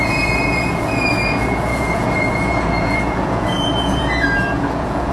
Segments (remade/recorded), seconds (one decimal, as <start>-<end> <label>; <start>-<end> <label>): 0.0-5.1 remade